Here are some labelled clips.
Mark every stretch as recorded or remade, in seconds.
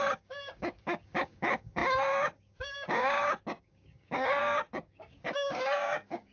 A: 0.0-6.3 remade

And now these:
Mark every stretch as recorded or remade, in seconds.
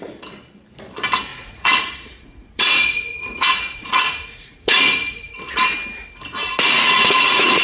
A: 0.0-1.3 recorded; 1.3-5.3 remade; 5.3-6.3 recorded; 6.3-7.6 remade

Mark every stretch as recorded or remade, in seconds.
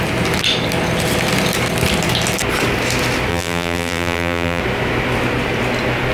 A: 0.0-3.3 recorded; 3.3-4.6 remade; 4.6-6.1 recorded